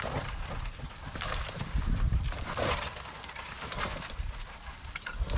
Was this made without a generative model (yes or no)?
yes